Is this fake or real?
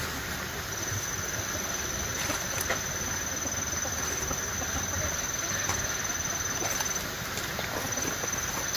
real